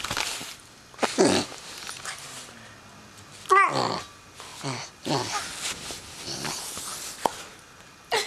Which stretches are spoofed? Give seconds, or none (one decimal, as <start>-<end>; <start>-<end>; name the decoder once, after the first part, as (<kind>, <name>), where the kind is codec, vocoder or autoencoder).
0.4-3.3 (vocoder, BigVGAN v2)